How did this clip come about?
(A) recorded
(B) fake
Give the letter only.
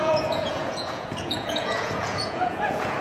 B